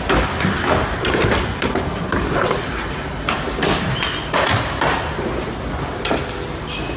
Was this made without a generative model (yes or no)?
yes